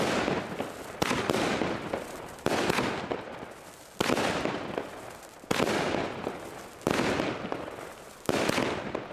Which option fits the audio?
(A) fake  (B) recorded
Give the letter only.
B